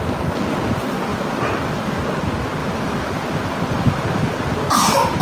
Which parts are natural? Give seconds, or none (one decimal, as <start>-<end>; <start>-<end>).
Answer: 0.0-1.1; 2.0-2.6

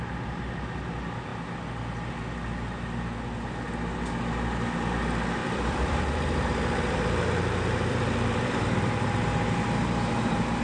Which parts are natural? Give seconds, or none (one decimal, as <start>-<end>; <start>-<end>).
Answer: 0.0-5.4; 10.1-10.6

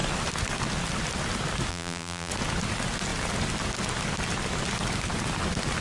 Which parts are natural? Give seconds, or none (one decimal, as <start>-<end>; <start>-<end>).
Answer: 0.0-1.7; 2.3-5.8